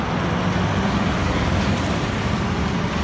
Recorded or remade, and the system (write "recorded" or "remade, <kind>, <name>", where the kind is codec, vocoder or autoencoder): recorded